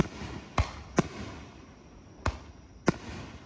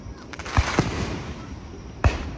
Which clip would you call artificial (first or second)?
second